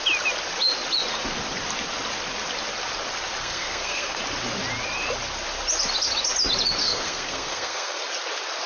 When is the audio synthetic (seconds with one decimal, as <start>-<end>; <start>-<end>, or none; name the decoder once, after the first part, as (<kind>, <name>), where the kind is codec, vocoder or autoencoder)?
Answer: 3.4-4.2 (codec, SNAC); 6.8-8.0